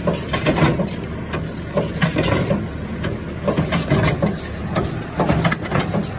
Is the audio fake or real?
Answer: real